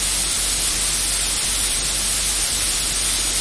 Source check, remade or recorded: recorded